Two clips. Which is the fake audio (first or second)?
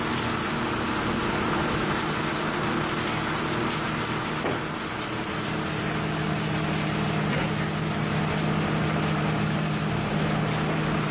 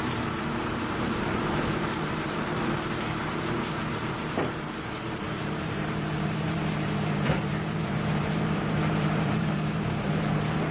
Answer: second